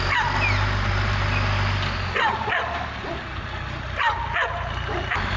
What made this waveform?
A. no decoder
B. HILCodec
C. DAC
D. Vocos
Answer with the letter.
A